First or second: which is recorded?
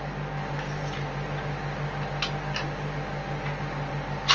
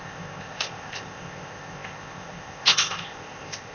first